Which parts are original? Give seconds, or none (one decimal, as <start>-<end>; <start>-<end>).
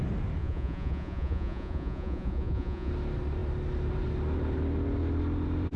0.0-0.4; 2.9-5.8